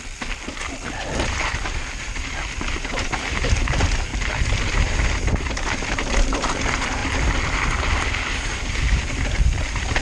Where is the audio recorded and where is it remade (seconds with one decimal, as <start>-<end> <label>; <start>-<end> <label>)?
0.0-0.5 recorded; 0.5-2.4 remade; 2.4-7.0 recorded; 7.0-8.8 remade; 8.8-10.0 recorded